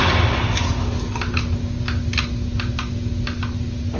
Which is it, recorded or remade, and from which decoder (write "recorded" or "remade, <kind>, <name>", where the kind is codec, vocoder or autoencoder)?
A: recorded